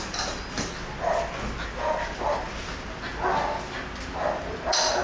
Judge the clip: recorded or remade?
recorded